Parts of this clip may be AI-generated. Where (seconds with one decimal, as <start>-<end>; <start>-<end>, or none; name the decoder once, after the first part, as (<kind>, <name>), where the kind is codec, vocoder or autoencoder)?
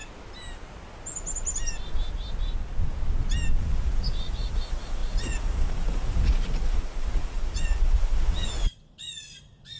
3.6-9.8 (vocoder, Vocos)